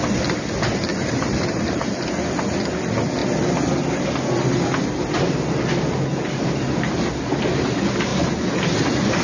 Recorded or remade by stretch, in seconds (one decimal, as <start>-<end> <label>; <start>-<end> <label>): 0.0-0.9 recorded; 0.9-2.1 remade; 2.1-8.1 recorded; 8.1-9.2 remade